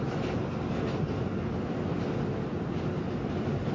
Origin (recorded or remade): recorded